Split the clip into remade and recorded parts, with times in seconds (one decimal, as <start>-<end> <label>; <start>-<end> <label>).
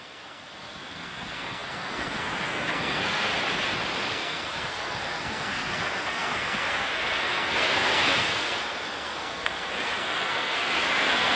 0.0-3.3 remade; 3.3-4.1 recorded; 4.1-11.4 remade